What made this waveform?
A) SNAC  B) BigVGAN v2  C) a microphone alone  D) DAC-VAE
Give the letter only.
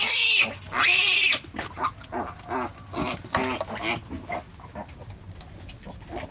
C